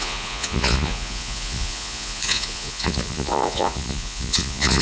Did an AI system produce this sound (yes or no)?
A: yes